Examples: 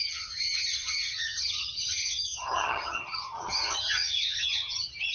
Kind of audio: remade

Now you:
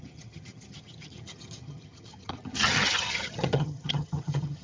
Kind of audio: remade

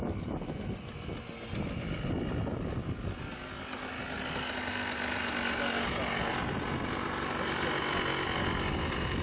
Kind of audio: recorded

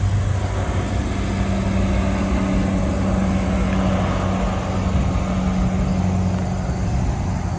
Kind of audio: recorded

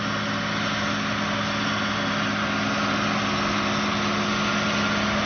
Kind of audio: recorded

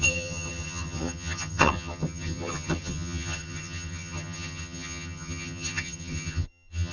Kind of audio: remade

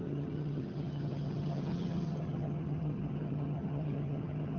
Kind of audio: remade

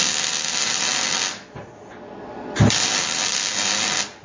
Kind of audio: recorded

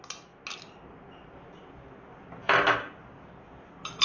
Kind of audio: recorded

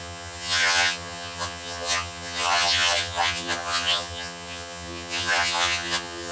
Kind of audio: remade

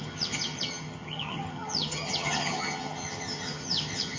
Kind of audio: remade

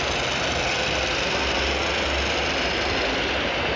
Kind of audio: recorded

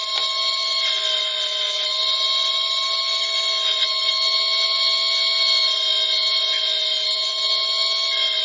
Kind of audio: recorded